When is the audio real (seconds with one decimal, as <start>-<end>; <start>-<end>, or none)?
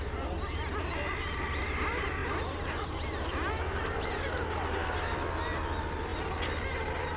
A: 0.0-7.2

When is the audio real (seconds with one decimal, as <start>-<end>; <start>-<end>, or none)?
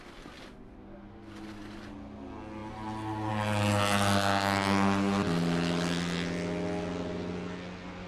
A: 0.0-8.1